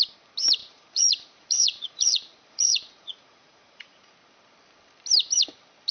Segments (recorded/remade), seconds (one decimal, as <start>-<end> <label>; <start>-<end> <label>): 0.0-0.6 recorded; 0.6-4.1 remade; 4.1-5.9 recorded